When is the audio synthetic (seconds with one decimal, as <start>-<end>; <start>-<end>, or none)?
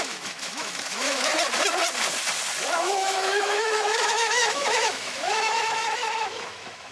0.0-1.3; 2.7-6.9